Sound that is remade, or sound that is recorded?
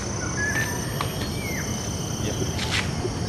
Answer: recorded